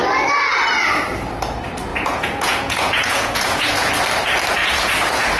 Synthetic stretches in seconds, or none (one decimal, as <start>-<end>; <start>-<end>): 1.9-3.9; 4.6-5.4